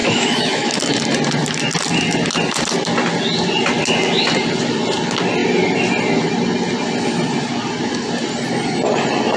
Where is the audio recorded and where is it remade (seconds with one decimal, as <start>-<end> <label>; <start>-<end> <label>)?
0.0-0.8 remade; 0.8-9.4 recorded

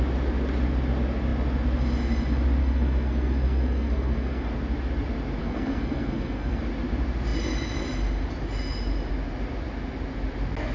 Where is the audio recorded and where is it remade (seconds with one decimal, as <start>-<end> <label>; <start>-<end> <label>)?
0.0-2.6 recorded; 2.6-4.5 remade; 4.5-5.4 recorded; 5.4-6.6 remade; 6.6-10.7 recorded

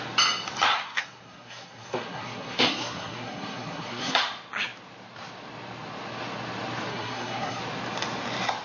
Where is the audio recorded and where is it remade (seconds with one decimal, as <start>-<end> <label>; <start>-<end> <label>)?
0.0-0.7 recorded; 0.7-4.2 remade; 4.2-6.9 recorded; 6.9-7.6 remade; 7.6-8.6 recorded

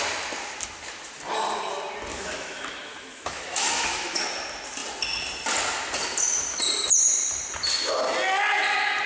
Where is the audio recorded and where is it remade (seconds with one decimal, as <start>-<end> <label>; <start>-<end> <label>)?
0.0-2.1 recorded; 2.1-4.2 remade; 4.2-9.1 recorded

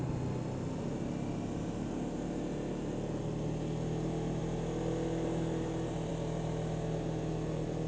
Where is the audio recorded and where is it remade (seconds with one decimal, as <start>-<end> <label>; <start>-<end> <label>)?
0.0-7.9 recorded

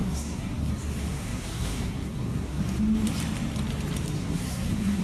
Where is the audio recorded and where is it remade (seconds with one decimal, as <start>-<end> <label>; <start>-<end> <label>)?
0.0-0.7 remade; 0.7-1.1 recorded; 1.1-2.6 remade; 2.6-4.2 recorded; 4.2-5.0 remade

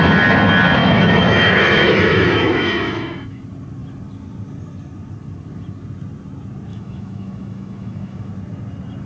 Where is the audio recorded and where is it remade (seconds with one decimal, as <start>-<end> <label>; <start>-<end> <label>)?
0.0-0.8 recorded; 0.8-3.4 remade; 3.4-6.7 recorded; 6.7-8.3 remade; 8.3-9.1 recorded

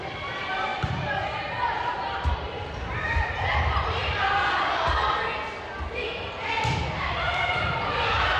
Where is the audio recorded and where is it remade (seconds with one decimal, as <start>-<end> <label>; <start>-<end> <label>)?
0.0-4.0 remade; 4.0-7.0 recorded; 7.0-8.4 remade